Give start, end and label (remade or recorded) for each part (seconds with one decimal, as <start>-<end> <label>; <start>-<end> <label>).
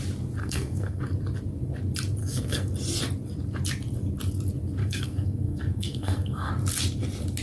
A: 0.0-0.4 recorded; 0.4-1.0 remade; 1.0-2.2 recorded; 2.2-2.7 remade; 2.7-4.8 recorded; 4.8-6.5 remade; 6.5-7.4 recorded